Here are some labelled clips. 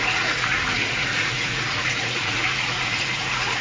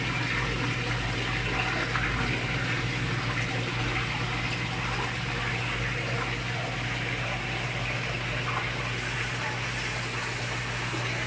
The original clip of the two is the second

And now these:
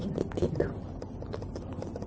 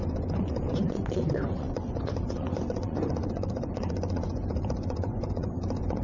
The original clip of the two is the first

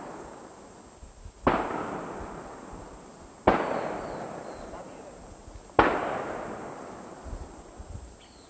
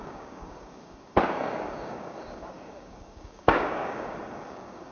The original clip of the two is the first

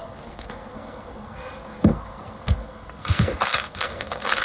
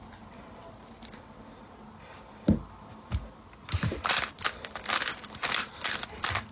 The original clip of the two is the second